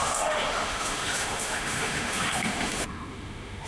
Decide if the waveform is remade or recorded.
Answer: remade